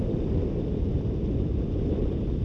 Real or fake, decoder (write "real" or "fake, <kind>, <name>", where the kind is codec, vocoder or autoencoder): real